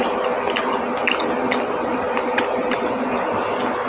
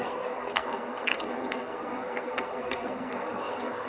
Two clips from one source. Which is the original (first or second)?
first